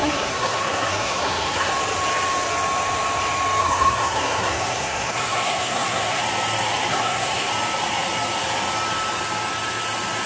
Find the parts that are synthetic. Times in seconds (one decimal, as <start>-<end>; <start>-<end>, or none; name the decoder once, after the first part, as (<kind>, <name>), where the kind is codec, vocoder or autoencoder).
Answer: 0.0-1.7 (codec, SNAC); 3.6-6.2; 6.9-7.5